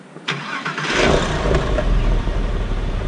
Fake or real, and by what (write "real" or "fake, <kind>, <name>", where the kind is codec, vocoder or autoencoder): fake, vocoder, BigVGAN v2